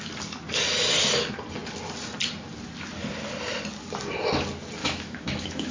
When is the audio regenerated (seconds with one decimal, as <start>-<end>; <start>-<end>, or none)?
4.8-5.7